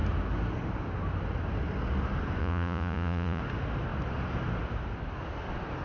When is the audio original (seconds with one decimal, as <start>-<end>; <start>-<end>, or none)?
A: 0.0-2.4; 3.4-5.8